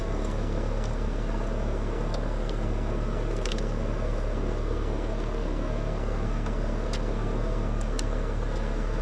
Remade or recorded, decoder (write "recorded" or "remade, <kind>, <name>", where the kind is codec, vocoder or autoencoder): remade, codec, SNAC